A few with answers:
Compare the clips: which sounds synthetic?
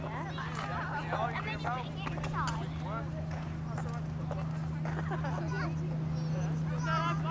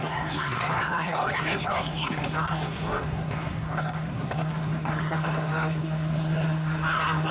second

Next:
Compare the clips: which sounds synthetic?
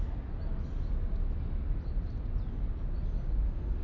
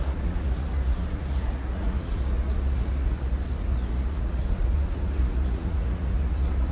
second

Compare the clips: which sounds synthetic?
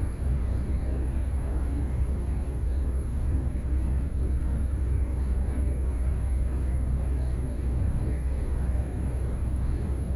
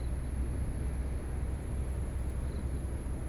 first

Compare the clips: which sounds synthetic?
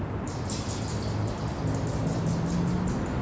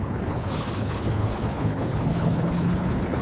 second